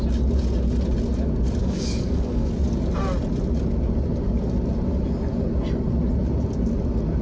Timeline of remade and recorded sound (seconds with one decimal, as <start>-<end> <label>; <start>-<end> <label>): 0.0-1.6 recorded; 1.6-2.5 remade; 2.5-7.2 recorded